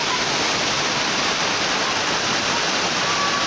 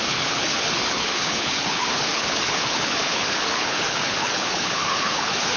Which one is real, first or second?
first